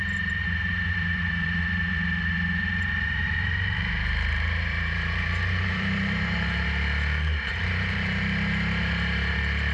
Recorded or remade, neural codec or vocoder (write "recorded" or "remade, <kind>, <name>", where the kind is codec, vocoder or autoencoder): remade, vocoder, BigVGAN v2